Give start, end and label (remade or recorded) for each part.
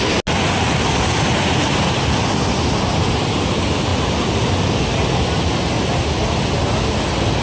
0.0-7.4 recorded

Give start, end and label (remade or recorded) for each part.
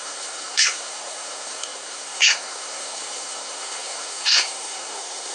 0.0-5.3 remade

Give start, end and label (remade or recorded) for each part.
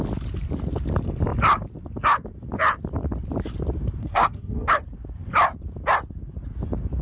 0.0-4.0 recorded; 4.0-4.7 remade; 4.7-7.0 recorded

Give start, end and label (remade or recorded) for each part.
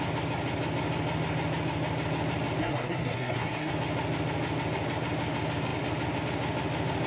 0.0-2.6 recorded; 2.6-3.7 remade; 3.7-7.1 recorded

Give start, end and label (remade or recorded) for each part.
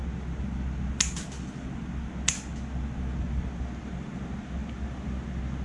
0.0-5.6 recorded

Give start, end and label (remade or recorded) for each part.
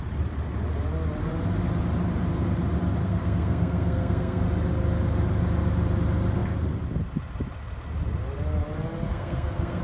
0.0-3.0 recorded; 3.0-4.4 remade; 4.4-9.1 recorded; 9.1-9.8 remade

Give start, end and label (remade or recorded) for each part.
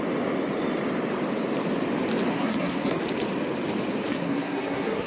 0.0-2.3 recorded; 2.3-3.0 remade; 3.0-4.1 recorded; 4.1-5.1 remade